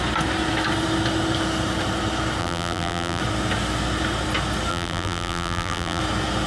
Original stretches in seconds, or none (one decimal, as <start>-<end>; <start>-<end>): 0.0-2.4; 3.2-4.7; 6.0-6.5